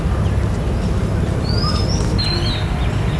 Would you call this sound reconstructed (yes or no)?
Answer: no